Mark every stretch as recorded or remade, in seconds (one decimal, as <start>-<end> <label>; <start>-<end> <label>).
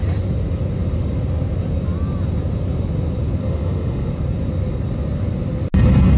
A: 0.0-3.4 recorded; 3.4-4.1 remade; 4.1-6.2 recorded